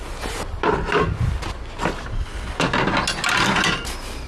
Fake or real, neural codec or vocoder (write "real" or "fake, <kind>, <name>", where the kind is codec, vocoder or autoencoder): real